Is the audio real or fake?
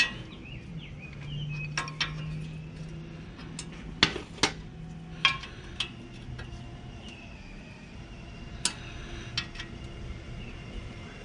real